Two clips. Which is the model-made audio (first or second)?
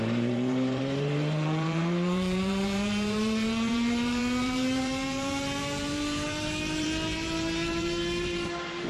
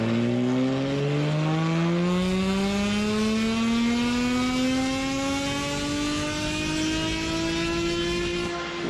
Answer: first